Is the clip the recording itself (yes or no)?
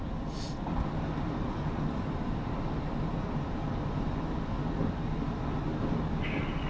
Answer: yes